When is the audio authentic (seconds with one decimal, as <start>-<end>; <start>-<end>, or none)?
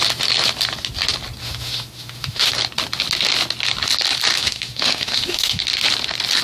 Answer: 0.0-1.4; 2.5-4.3; 5.6-6.4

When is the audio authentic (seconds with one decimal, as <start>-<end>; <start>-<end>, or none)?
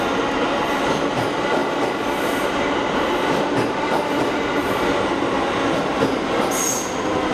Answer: 0.0-7.3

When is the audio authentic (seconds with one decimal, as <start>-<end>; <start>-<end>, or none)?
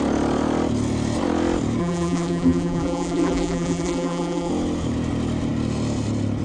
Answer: 0.0-1.8; 4.5-6.4